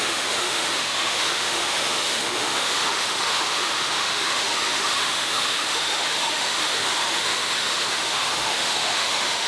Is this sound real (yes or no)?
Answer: no